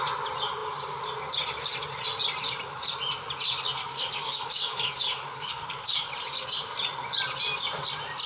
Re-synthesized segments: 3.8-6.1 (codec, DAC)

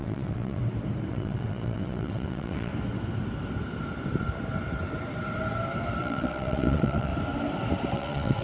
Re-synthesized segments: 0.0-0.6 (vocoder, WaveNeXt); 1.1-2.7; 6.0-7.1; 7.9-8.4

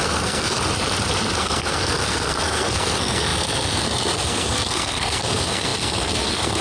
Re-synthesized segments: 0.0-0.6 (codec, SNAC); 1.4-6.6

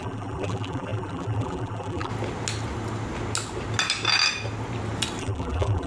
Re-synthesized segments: 0.0-2.1 (vocoder, BigVGAN v2); 5.2-5.9